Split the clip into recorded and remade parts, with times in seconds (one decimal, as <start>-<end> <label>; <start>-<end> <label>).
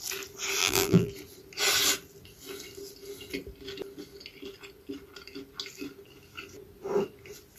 0.0-0.6 recorded; 0.6-1.1 remade; 1.1-7.6 recorded